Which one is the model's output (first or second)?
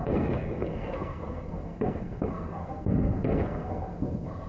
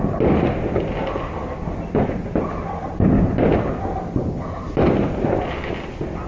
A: first